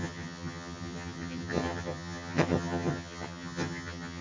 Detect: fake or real fake